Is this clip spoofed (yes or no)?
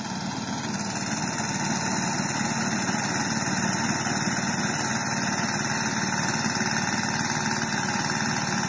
no